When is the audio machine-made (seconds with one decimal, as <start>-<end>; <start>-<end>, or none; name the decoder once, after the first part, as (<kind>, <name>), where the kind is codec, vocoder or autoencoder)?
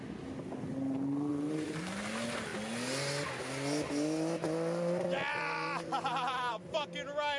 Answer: 1.3-2.0 (vocoder, BigVGAN v2); 5.3-6.6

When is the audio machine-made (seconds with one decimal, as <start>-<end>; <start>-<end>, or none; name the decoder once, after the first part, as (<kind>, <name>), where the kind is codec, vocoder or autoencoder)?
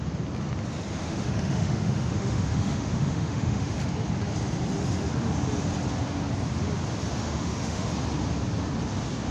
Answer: 1.0-3.8 (autoencoder, DAC-VAE); 7.2-7.9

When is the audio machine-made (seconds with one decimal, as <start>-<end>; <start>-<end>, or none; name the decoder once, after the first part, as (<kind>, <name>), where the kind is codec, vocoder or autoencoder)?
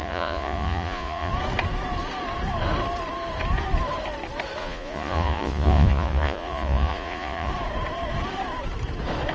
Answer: 0.0-1.3 (vocoder, Vocos); 4.6-7.5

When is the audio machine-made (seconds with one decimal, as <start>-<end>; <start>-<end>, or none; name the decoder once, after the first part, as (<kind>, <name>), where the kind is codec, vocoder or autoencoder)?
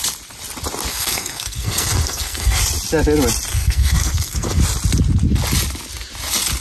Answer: 0.9-2.6 (codec, SNAC); 3.5-4.6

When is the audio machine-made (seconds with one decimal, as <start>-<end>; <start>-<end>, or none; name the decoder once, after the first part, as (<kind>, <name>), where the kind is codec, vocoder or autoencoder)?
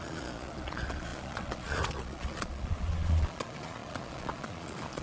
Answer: 0.0-5.0 (vocoder, Vocos)